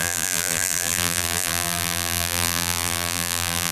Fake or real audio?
fake